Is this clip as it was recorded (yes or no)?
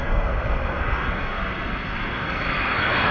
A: no